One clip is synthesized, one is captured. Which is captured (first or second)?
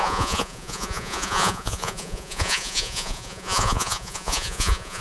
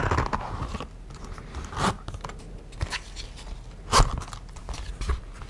second